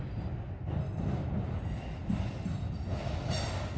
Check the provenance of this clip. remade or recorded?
recorded